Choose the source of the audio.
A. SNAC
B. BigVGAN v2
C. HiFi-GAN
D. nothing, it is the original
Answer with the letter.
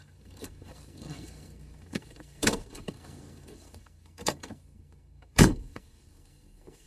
A